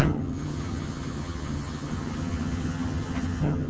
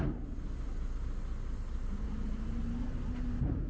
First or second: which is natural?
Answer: second